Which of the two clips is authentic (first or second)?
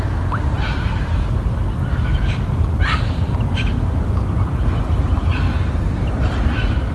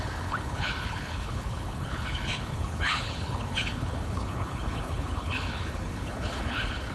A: first